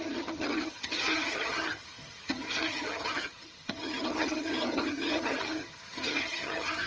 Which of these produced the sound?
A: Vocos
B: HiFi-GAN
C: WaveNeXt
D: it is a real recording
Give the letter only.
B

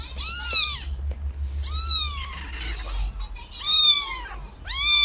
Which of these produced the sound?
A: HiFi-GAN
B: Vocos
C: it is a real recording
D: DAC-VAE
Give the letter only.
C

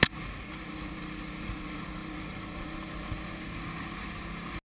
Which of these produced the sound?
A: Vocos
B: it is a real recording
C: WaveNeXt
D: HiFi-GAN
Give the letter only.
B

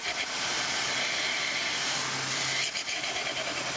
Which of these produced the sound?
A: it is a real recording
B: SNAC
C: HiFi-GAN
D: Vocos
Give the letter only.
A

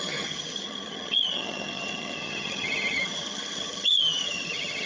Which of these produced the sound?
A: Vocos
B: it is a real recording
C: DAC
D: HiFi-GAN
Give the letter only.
D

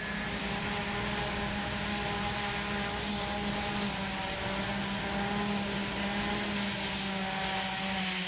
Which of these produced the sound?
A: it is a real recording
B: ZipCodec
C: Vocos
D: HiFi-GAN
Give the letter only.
A